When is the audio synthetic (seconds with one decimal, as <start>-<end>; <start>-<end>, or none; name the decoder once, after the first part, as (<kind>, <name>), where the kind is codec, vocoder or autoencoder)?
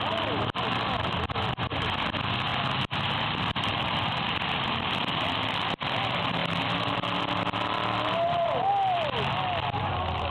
none